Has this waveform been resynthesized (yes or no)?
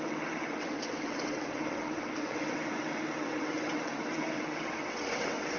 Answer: yes